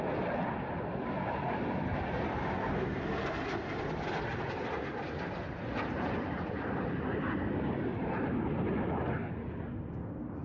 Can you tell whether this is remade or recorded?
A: recorded